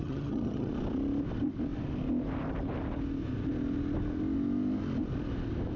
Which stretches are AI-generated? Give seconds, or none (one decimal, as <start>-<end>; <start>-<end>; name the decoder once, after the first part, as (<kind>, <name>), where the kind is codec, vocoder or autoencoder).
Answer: 0.0-0.7 (vocoder, HiFi-GAN)